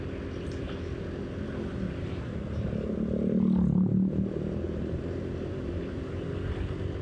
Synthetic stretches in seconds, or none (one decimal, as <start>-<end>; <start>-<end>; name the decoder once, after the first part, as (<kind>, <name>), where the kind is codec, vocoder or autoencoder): 4.8-6.2 (vocoder, BigVGAN v2)